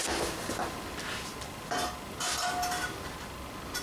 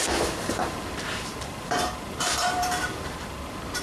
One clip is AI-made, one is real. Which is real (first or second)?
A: first